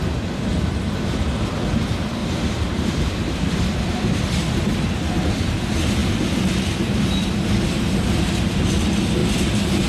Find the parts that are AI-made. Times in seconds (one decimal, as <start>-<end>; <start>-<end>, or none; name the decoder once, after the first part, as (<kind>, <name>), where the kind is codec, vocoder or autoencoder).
2.2-4.2 (vocoder, BigVGAN v2)